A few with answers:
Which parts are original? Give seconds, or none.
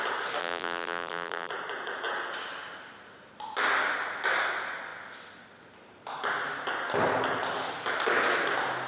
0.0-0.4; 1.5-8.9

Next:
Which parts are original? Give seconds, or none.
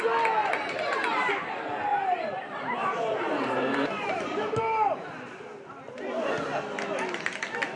0.0-0.4; 1.3-1.9; 4.6-7.8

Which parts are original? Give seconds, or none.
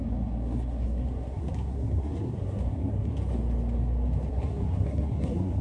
3.1-4.3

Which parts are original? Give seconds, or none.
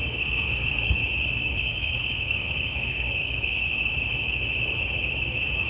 1.0-1.7; 3.9-5.7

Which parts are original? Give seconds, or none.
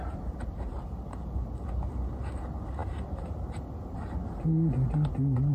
0.0-5.5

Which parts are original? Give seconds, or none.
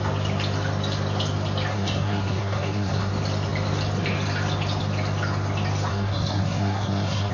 0.0-1.7; 3.1-5.9